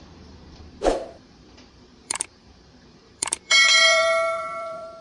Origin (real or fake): fake